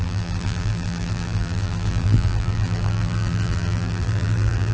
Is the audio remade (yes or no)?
yes